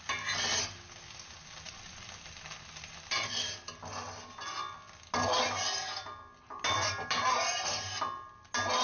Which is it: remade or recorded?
recorded